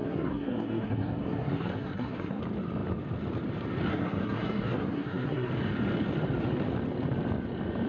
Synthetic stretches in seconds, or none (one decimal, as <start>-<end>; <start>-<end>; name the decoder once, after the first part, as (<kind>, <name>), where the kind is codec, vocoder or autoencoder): 0.0-2.4 (codec, SNAC); 3.9-5.5